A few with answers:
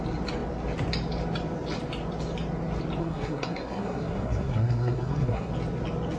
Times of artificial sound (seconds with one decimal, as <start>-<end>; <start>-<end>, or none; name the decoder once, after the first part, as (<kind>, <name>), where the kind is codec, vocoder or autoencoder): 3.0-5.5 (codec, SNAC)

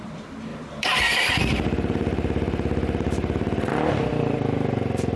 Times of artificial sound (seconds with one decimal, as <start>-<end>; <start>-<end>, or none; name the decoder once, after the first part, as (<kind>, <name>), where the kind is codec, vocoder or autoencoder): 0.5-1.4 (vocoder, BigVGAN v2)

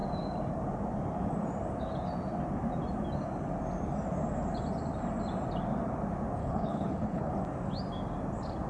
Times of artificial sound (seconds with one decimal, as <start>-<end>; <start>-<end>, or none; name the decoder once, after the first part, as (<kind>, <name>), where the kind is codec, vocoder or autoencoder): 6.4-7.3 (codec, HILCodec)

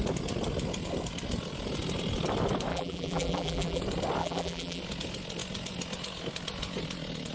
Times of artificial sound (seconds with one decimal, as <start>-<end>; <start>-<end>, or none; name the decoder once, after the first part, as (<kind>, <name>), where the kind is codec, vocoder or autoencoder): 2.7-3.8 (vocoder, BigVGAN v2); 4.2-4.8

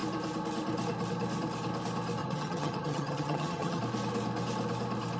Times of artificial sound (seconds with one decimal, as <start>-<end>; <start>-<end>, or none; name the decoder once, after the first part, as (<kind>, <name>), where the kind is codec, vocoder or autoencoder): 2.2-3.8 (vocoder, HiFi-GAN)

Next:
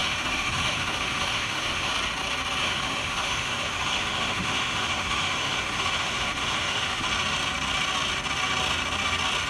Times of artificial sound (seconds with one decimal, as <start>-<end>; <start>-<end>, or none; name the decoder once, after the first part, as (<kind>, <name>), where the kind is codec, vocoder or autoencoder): 0.0-1.9 (autoencoder, DAC-VAE); 2.6-7.1

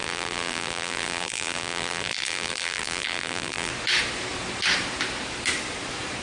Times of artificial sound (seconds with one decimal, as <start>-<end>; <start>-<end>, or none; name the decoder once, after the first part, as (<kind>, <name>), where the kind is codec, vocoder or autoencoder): 0.0-3.7 (vocoder, BigVGAN v2)